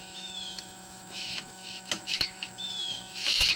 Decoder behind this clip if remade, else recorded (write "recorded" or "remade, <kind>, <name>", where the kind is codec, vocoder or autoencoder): remade, autoencoder, DAC-VAE